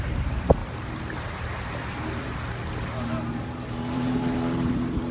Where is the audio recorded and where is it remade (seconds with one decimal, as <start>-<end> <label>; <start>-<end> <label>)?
0.0-0.6 remade; 0.6-3.7 recorded; 3.7-5.1 remade